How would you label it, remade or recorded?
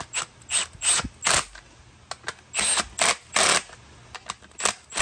recorded